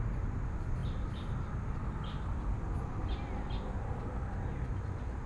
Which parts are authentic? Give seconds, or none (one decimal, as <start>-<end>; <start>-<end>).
0.0-5.3